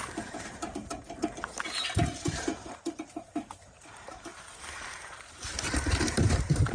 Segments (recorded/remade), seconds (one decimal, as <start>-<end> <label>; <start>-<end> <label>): 0.0-6.7 remade